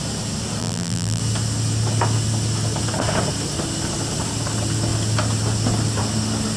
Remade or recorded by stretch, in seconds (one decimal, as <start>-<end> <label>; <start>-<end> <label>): 0.0-0.6 recorded; 0.6-1.2 remade; 1.2-6.6 recorded